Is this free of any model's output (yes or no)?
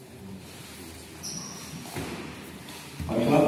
yes